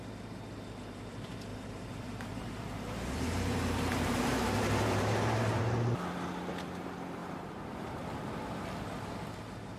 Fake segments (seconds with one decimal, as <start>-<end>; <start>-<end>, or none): 1.5-5.6; 7.2-8.2